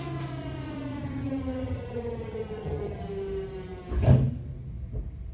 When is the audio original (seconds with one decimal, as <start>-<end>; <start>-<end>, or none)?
0.0-1.0; 3.0-5.3